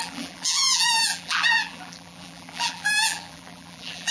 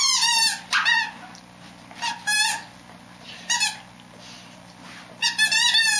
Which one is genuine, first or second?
second